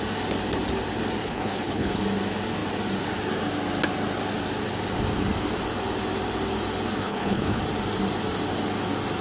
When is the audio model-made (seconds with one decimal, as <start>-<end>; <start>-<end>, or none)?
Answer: 1.2-2.0; 7.0-7.6